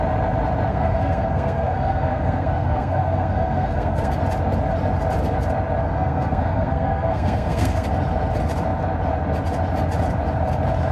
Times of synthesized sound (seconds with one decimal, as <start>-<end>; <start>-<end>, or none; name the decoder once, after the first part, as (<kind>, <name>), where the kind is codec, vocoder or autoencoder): 0.7-4.1 (codec, SNAC); 5.8-7.9